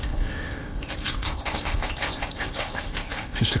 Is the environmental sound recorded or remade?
remade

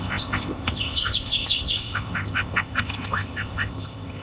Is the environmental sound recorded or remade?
remade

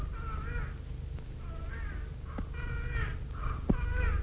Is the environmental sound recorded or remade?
recorded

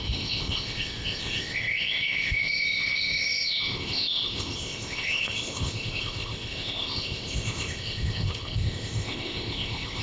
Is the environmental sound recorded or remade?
remade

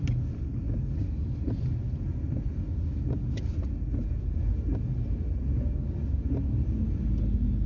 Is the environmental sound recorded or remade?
recorded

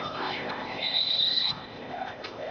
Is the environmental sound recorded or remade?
remade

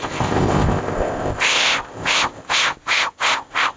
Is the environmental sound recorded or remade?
remade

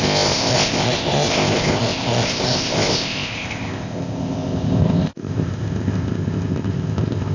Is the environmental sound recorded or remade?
remade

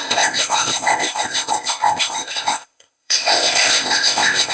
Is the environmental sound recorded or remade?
remade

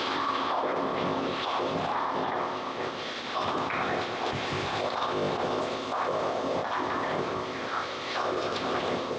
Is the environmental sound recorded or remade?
remade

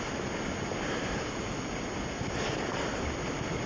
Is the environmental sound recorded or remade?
recorded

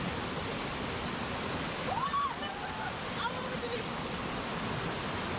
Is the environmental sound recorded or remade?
recorded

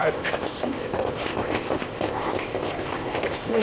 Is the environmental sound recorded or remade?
remade